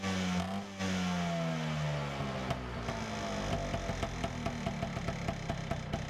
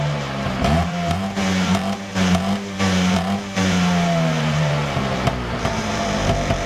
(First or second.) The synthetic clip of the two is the second